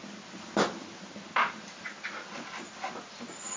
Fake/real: real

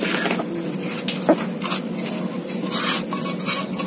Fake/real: real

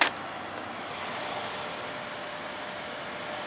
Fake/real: real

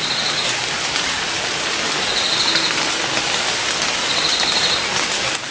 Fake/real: real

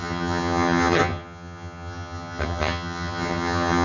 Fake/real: fake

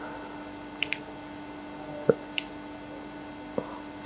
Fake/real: real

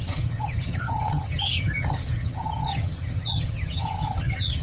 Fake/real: fake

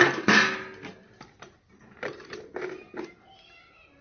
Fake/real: real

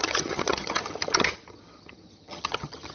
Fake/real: fake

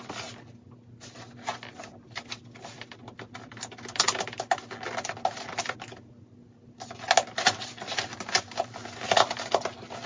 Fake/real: real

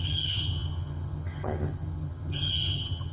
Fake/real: fake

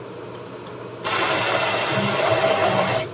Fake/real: real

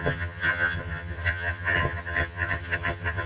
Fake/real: fake